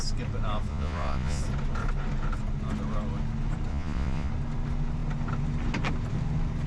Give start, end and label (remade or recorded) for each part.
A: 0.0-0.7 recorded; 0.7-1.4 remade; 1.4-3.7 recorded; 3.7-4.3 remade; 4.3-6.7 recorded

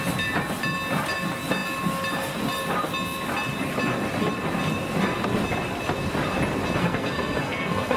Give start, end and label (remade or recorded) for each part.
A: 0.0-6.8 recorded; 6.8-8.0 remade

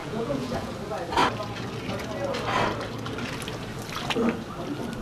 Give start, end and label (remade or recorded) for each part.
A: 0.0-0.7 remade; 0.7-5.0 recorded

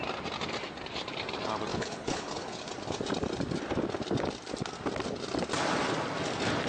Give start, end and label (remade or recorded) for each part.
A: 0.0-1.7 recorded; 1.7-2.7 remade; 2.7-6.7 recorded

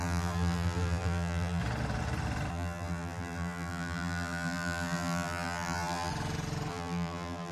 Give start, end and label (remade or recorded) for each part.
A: 0.0-1.6 remade; 1.6-2.5 recorded; 2.5-6.1 remade; 6.1-6.7 recorded; 6.7-7.5 remade